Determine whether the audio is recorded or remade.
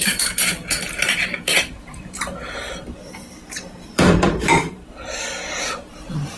remade